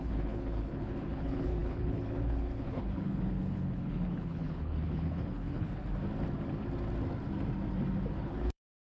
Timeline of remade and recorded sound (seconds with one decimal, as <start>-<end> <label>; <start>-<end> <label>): 0.0-5.8 remade; 5.8-8.1 recorded; 8.1-8.8 remade